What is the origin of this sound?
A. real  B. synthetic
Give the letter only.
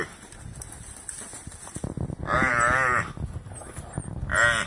A